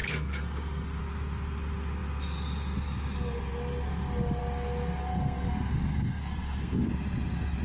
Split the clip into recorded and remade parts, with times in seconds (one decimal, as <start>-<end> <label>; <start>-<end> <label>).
0.0-1.0 remade; 1.0-5.0 recorded; 5.0-5.5 remade; 5.5-5.9 recorded; 5.9-6.9 remade; 6.9-7.6 recorded